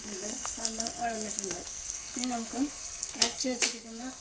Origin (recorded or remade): remade